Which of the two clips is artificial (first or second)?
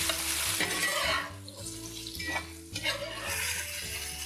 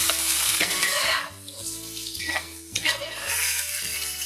second